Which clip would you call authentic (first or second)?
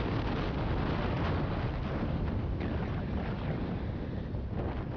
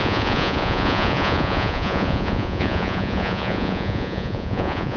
first